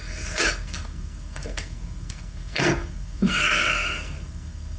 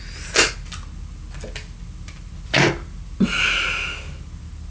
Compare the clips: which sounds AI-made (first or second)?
first